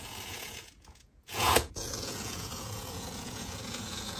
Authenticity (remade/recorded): remade